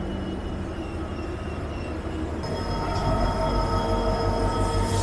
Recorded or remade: recorded